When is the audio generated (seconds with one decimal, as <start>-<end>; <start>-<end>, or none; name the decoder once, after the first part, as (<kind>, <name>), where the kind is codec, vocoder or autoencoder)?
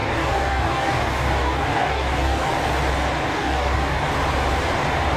0.0-2.5 (codec, DAC); 3.3-4.0